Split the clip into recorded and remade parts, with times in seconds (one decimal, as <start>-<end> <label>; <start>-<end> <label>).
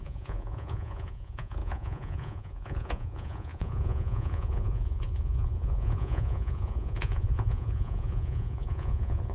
0.0-9.3 remade